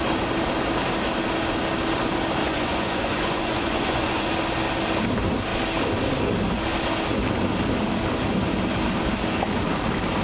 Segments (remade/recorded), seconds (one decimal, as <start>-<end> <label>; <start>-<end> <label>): 0.0-2.4 recorded; 2.4-4.3 remade; 4.3-10.2 recorded